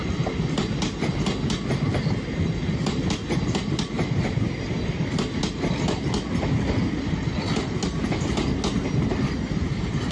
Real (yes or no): yes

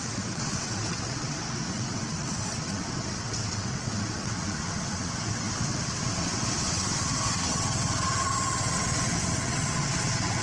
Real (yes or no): no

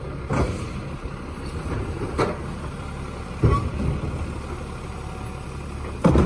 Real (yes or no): yes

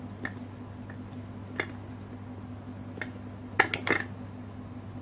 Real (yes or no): yes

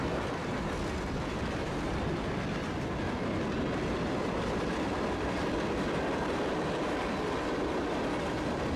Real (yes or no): yes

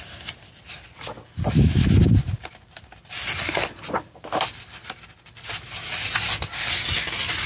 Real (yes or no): yes